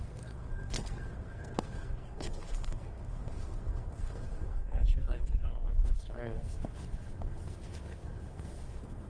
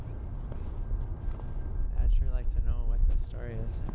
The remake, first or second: first